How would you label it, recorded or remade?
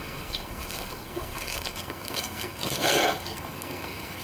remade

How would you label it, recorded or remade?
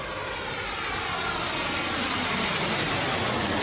recorded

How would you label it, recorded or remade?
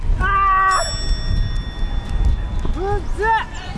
recorded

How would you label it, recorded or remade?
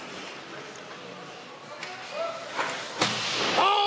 recorded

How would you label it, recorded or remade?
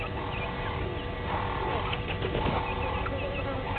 recorded